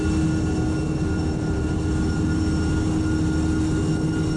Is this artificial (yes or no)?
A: no